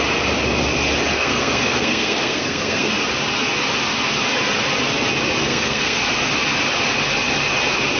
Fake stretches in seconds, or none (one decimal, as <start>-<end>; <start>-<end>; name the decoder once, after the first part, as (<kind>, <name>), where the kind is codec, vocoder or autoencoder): 1.1-2.9 (codec, SNAC); 5.4-6.0